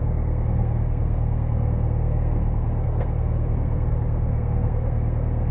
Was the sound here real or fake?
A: fake